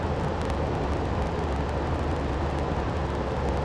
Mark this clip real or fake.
real